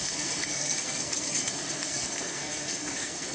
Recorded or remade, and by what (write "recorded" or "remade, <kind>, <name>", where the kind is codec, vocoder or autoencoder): remade, codec, SNAC